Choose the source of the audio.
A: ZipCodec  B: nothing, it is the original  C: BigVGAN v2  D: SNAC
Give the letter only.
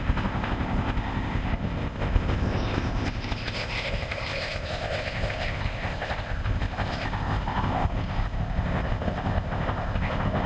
A